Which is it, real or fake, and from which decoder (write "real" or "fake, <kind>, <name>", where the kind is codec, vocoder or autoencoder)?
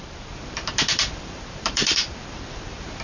fake, vocoder, BigVGAN v2